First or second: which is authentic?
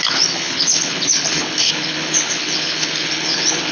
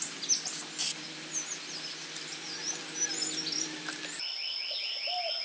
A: second